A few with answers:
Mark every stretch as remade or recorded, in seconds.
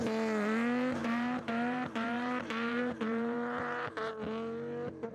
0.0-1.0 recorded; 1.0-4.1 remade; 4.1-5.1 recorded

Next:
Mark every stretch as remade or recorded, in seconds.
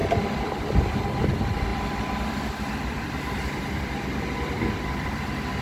0.0-0.8 remade; 0.8-1.7 recorded; 1.7-5.1 remade; 5.1-5.6 recorded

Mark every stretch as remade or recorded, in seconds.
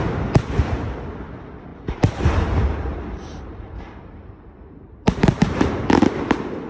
0.0-1.7 recorded; 1.7-5.7 remade; 5.7-6.7 recorded